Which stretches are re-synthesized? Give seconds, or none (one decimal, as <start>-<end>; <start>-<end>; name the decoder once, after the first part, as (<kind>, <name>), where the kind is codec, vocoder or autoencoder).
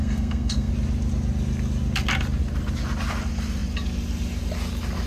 0.0-0.7 (codec, SNAC)